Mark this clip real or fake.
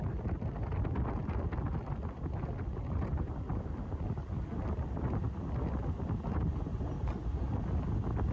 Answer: real